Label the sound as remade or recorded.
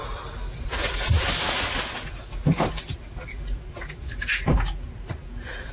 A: recorded